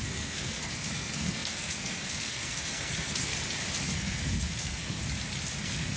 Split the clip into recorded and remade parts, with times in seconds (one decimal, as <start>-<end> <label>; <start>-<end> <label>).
0.0-3.3 remade; 3.3-3.8 recorded; 3.8-5.0 remade; 5.0-5.6 recorded; 5.6-6.0 remade